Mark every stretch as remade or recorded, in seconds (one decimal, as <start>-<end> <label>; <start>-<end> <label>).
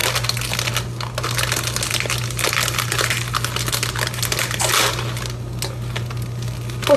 0.0-7.0 recorded